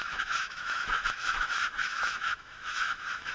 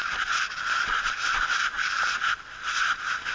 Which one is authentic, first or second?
second